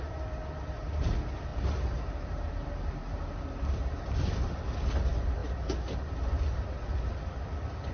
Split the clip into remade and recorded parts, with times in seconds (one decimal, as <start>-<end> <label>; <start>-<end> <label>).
0.0-1.5 recorded; 1.5-4.6 remade; 4.6-5.4 recorded; 5.4-6.9 remade; 6.9-7.9 recorded